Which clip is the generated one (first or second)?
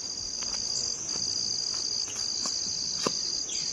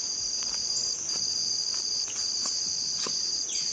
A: second